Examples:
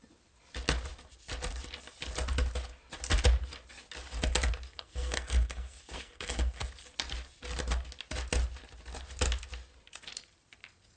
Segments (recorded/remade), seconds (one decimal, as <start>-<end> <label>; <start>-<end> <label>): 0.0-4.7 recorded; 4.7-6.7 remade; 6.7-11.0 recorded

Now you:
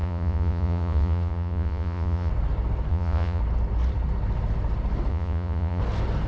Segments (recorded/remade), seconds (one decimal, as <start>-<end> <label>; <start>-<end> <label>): 0.0-2.3 remade; 2.3-2.9 recorded; 2.9-3.4 remade; 3.4-5.1 recorded; 5.1-5.8 remade; 5.8-6.3 recorded

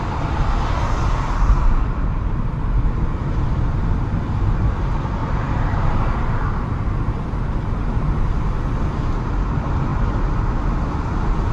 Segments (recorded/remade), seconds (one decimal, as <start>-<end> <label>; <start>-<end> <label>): 0.0-3.2 recorded; 3.2-3.9 remade; 3.9-5.2 recorded; 5.2-6.2 remade; 6.2-11.5 recorded